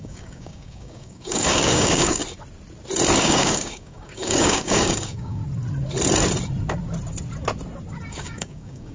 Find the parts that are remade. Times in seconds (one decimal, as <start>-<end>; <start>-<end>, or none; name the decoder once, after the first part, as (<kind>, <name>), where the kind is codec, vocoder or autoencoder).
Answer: 0.0-2.2 (codec, DAC); 3.2-5.4; 8.1-8.9